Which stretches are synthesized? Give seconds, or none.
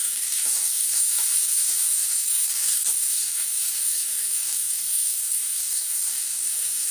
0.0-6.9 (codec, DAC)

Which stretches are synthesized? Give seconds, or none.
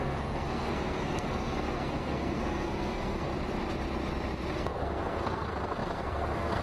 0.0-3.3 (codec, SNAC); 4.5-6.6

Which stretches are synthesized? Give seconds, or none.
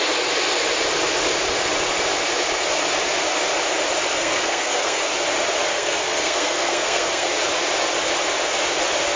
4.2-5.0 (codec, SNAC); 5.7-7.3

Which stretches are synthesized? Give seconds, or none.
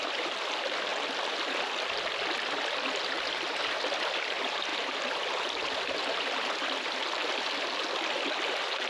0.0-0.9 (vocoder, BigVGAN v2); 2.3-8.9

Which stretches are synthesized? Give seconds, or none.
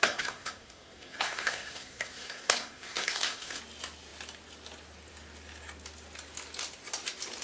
0.0-3.6 (codec, SNAC)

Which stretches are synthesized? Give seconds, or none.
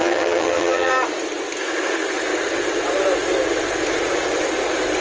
0.0-0.9 (vocoder, HiFi-GAN)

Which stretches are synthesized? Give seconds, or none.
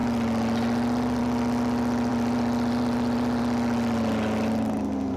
2.1-3.4 (vocoder, BigVGAN v2)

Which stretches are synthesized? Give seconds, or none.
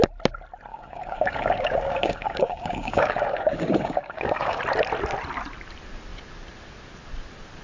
0.7-4.6 (codec, DAC)